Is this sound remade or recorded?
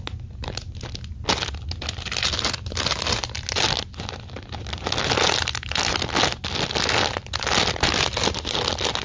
recorded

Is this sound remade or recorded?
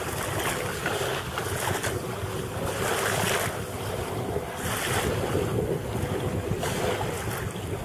recorded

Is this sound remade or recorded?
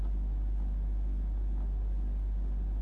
recorded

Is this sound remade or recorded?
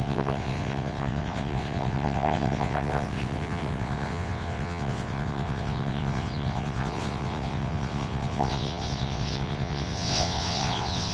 remade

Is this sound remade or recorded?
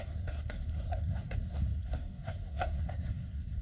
remade